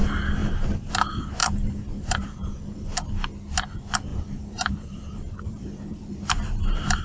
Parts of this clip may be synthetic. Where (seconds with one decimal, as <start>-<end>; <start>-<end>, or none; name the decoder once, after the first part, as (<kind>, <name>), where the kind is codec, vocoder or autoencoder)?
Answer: 0.4-0.9 (vocoder, BigVGAN v2); 1.4-2.6; 4.1-7.0